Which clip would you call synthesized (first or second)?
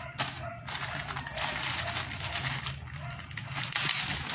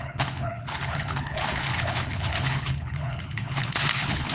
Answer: second